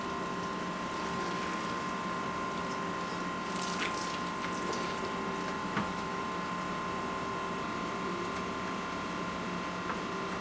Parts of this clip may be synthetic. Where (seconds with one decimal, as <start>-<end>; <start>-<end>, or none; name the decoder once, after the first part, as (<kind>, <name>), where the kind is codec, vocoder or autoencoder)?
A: 5.6-6.2 (autoencoder, DAC-VAE)